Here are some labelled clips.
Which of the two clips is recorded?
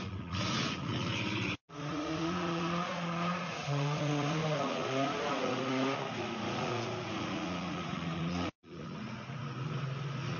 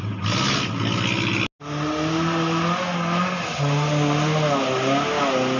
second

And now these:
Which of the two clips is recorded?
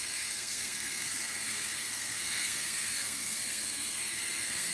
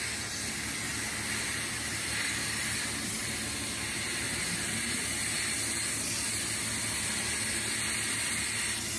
second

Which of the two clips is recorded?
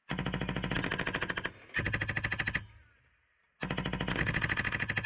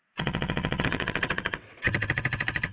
first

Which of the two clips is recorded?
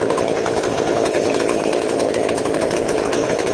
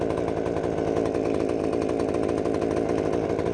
second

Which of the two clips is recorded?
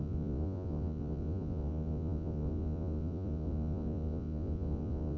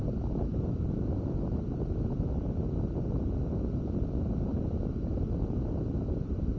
second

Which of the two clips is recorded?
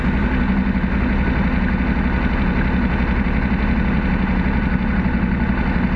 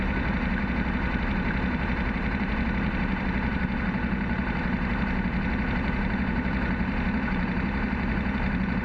first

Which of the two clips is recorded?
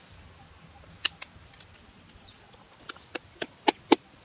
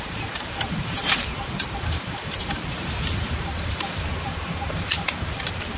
first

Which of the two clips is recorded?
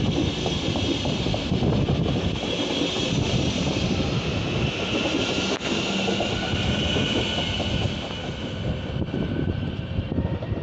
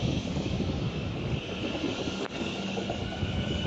first